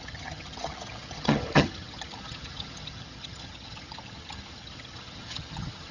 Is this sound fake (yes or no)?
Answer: yes